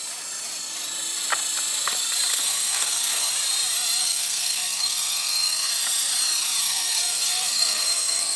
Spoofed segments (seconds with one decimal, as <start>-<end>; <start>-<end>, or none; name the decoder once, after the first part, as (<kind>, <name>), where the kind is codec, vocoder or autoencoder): 2.3-3.3 (codec, SNAC); 4.0-5.7; 6.6-8.4